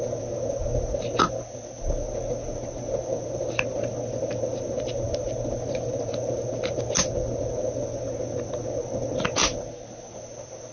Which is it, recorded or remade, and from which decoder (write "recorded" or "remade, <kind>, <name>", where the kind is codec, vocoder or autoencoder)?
recorded